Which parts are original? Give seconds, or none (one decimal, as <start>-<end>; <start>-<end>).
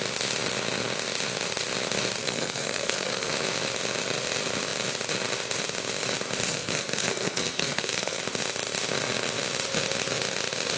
0.0-2.2; 3.3-6.5; 8.2-10.8